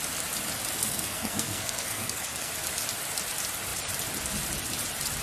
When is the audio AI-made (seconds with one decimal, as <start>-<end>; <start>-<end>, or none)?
0.8-2.5